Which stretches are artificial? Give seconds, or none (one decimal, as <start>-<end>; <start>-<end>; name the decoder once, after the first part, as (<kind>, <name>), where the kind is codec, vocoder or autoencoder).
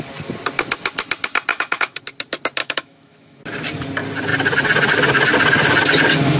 1.5-2.0 (autoencoder, DAC-VAE); 2.6-3.4